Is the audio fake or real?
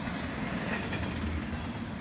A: real